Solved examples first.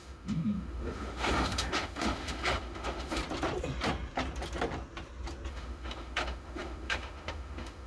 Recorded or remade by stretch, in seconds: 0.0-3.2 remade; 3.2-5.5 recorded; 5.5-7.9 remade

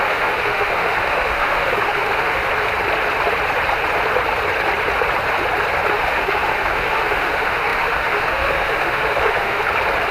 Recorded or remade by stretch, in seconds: 0.0-2.5 remade; 2.5-5.9 recorded; 5.9-9.6 remade; 9.6-10.1 recorded

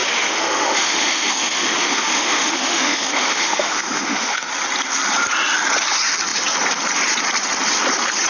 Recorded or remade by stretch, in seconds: 0.0-4.5 remade; 4.5-8.3 recorded

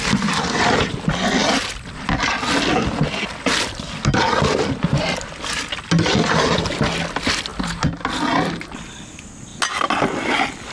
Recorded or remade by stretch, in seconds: 0.0-10.7 recorded

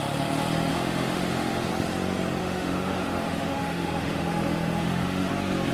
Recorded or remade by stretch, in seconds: 0.0-0.7 recorded; 0.7-1.7 remade; 1.7-2.4 recorded; 2.4-5.3 remade; 5.3-5.7 recorded